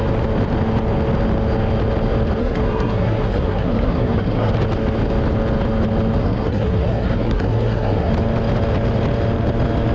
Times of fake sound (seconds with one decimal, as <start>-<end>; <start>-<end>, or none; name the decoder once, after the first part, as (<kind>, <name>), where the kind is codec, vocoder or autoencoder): 2.4-4.5 (codec, SNAC); 6.2-8.1